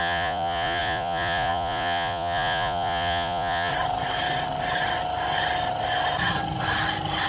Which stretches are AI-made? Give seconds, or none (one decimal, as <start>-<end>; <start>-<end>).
0.0-3.7